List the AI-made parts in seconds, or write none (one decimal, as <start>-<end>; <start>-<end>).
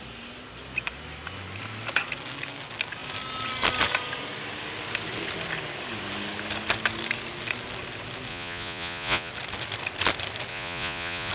8.3-9.3; 10.5-11.3